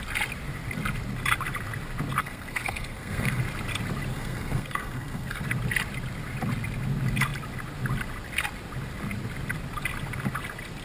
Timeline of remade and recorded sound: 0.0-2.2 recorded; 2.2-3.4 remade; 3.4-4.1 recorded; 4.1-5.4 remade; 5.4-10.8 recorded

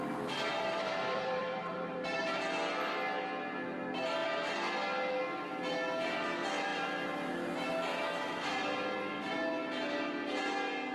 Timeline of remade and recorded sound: 0.0-0.5 recorded; 0.5-2.5 remade; 2.5-10.9 recorded